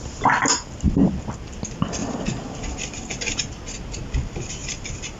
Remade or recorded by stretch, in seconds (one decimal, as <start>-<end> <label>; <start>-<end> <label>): 0.0-1.1 remade; 1.1-2.0 recorded; 2.0-3.1 remade; 3.1-4.6 recorded; 4.6-5.2 remade